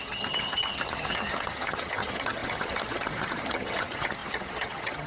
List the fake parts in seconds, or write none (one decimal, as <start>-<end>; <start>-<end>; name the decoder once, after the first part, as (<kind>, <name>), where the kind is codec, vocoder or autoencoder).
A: 0.0-5.1 (vocoder, HiFi-GAN)